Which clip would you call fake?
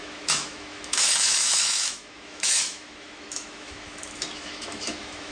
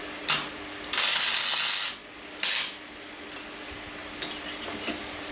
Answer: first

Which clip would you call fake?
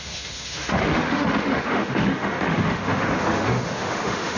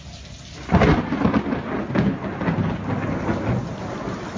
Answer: first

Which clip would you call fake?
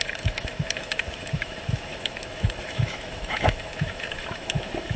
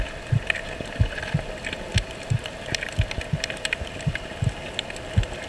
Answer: first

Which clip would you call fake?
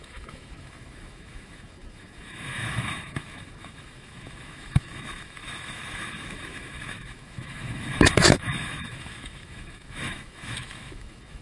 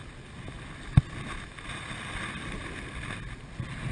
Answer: first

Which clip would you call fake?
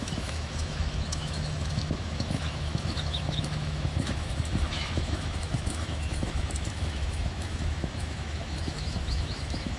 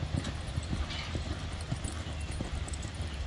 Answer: first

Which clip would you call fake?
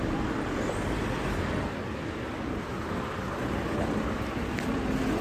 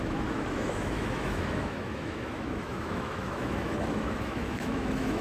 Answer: second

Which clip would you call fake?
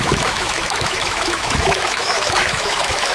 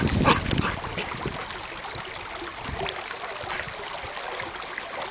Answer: first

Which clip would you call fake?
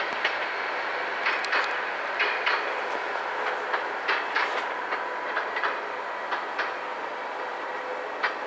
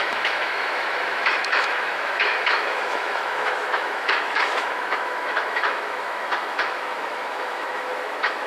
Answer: second